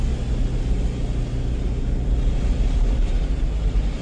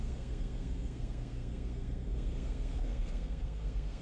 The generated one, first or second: second